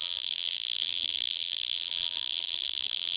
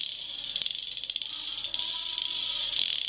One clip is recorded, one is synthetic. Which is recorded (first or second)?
second